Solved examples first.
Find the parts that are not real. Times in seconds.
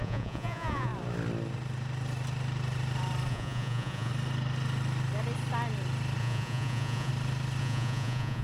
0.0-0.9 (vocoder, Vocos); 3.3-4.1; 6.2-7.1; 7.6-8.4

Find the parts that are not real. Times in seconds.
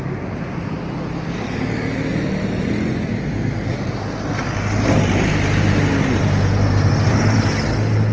2.1-2.7 (vocoder, BigVGAN v2)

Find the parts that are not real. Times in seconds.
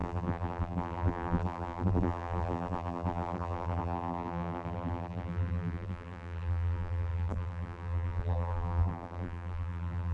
0.0-10.1 (vocoder, BigVGAN v2)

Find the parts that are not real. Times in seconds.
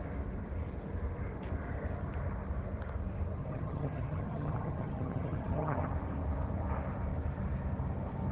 3.4-5.9 (vocoder, HiFi-GAN)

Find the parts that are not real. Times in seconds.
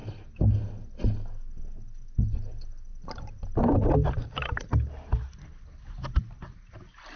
none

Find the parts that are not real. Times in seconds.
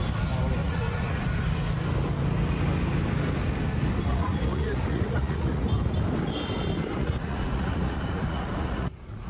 0.6-1.2 (vocoder, Vocos); 4.1-5.6; 7.0-9.3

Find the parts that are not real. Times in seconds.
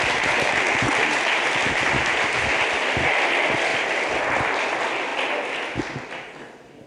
none